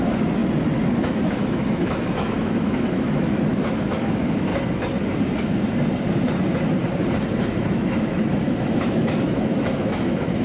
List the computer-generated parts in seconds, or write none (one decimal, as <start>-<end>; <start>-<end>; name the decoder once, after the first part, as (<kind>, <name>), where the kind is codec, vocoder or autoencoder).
0.0-0.4 (autoencoder, DAC-VAE); 1.0-4.5; 7.4-10.4